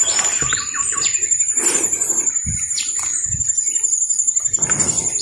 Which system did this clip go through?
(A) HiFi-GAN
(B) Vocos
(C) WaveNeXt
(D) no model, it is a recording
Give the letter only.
D